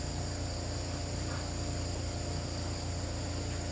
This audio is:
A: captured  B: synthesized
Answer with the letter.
A